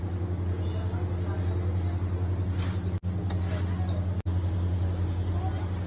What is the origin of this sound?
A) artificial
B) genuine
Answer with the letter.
B